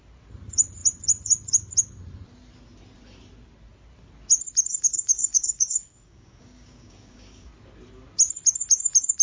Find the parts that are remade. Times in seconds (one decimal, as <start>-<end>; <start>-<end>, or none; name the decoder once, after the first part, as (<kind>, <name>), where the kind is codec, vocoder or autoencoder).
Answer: 4.7-7.5 (codec, DAC)